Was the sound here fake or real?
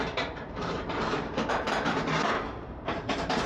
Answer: fake